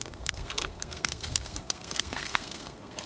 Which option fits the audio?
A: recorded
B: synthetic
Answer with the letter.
B